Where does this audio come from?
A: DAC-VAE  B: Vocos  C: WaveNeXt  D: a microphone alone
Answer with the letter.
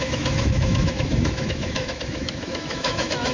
A